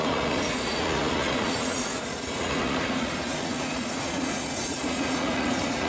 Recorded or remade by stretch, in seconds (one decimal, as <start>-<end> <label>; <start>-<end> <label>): 0.0-5.9 remade